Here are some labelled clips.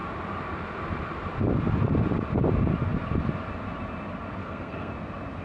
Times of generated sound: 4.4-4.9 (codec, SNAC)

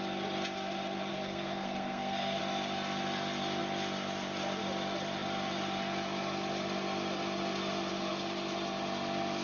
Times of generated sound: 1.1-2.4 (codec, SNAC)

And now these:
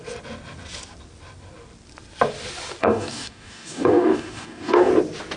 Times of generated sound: 2.8-4.9 (codec, DAC)

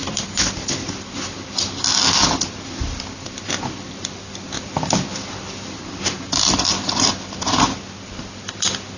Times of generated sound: 0.0-5.2 (vocoder, BigVGAN v2)